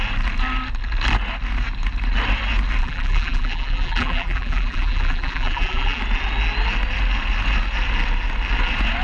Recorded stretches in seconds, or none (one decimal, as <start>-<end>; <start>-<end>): 0.0-2.8; 6.0-9.0